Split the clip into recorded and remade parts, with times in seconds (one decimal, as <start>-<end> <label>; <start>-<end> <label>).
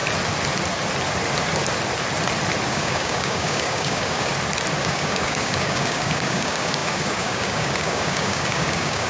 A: 0.0-2.7 recorded; 2.7-4.3 remade; 4.3-4.8 recorded; 4.8-9.1 remade